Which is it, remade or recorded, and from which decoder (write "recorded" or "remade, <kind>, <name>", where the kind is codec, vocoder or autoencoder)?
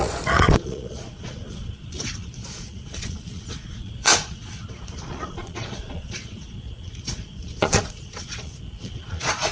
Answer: remade, vocoder, Vocos